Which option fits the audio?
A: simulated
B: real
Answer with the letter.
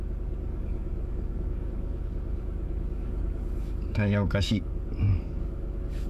A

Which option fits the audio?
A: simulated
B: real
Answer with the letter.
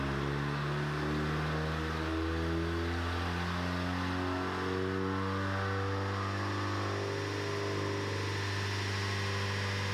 B